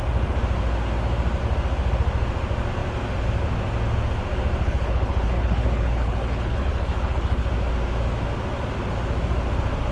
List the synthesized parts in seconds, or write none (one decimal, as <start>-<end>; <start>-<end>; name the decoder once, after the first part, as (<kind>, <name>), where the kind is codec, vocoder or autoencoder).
4.6-7.5 (codec, HILCodec)